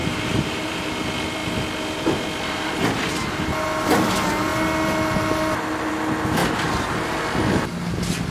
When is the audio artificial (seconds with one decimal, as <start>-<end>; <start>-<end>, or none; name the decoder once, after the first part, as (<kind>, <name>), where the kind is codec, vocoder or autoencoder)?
0.0-0.9 (vocoder, BigVGAN v2)